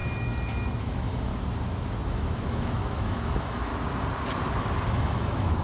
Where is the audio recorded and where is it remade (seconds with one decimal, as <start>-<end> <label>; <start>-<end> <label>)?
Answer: 0.0-0.8 recorded; 0.8-1.3 remade; 1.3-2.1 recorded; 2.1-3.7 remade; 3.7-4.9 recorded; 4.9-5.6 remade